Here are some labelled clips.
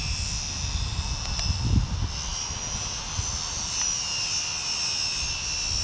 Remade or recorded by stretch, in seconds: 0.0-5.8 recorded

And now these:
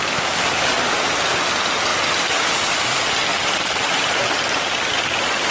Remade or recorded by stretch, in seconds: 0.0-3.3 recorded; 3.3-4.9 remade; 4.9-5.5 recorded

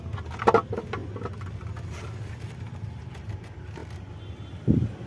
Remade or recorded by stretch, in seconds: 0.0-1.0 recorded; 1.0-3.3 remade; 3.3-5.1 recorded